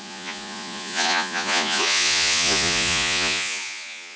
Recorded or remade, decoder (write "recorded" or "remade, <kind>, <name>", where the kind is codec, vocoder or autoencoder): remade, vocoder, Vocos